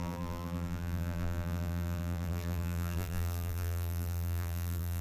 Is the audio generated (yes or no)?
yes